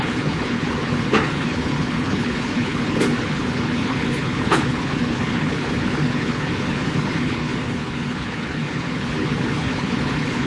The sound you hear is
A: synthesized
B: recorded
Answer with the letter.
A